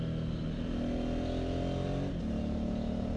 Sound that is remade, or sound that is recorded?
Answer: recorded